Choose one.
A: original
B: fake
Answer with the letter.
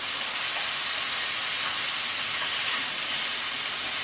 A